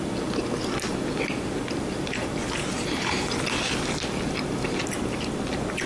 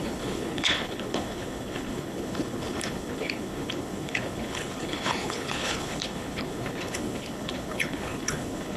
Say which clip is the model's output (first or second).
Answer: second